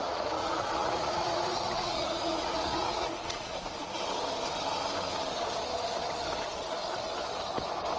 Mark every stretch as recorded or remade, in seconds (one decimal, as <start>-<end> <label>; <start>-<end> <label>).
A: 0.0-3.7 remade; 3.7-8.0 recorded